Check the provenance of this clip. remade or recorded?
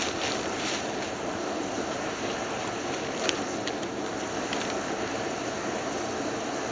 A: recorded